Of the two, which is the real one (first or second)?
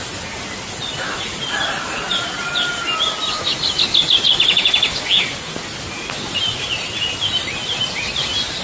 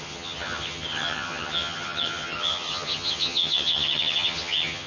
first